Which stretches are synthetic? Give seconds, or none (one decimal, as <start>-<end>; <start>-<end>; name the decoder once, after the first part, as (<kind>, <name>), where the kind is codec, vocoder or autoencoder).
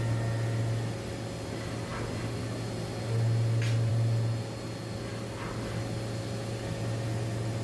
none